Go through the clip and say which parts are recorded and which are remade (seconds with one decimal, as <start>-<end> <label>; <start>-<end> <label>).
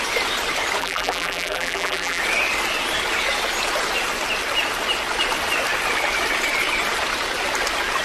0.0-0.8 recorded; 0.8-2.2 remade; 2.2-8.0 recorded